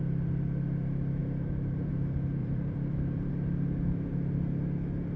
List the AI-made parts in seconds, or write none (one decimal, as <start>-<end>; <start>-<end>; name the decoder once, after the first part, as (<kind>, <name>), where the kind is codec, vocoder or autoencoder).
1.2-1.9 (vocoder, BigVGAN v2); 2.4-3.3

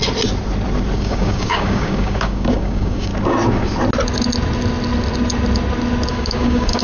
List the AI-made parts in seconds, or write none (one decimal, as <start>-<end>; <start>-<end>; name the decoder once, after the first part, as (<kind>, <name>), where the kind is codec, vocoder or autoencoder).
1.0-3.1 (codec, DAC); 6.1-6.8

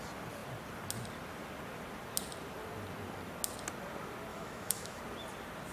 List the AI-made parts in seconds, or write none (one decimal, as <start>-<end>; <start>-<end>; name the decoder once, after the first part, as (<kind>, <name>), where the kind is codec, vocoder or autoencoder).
4.3-5.0 (autoencoder, DAC-VAE)

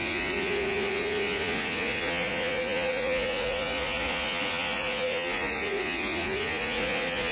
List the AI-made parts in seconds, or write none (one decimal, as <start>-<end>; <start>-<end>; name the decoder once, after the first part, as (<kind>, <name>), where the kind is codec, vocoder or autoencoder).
0.0-7.3 (vocoder, Vocos)

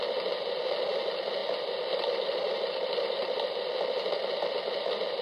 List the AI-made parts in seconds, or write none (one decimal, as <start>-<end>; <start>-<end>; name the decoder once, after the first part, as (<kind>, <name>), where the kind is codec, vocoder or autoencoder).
1.4-4.5 (vocoder, BigVGAN v2)

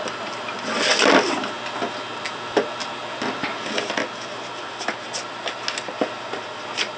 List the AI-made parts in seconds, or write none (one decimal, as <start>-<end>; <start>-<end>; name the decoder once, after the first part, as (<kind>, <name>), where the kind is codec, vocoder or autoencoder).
none

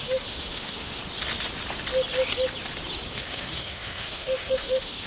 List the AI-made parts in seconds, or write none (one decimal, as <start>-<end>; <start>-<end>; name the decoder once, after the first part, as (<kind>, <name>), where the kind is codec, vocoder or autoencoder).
0.0-1.0 (autoencoder, DAC-VAE); 3.1-5.1